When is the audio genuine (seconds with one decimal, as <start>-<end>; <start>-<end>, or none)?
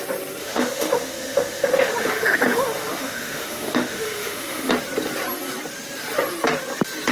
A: 0.0-0.4; 4.7-7.1